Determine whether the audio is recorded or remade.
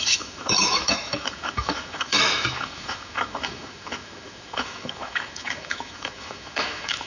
remade